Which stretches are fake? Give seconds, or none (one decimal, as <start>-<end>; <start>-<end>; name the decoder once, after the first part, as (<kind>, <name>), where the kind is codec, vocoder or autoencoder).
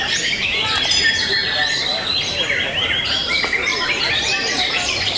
0.0-1.4 (vocoder, BigVGAN v2); 3.0-5.2